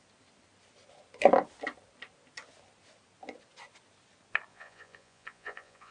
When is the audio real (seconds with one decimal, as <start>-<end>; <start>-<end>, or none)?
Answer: 0.0-4.5